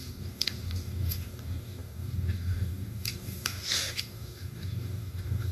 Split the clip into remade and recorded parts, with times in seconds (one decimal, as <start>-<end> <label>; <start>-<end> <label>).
0.0-5.5 remade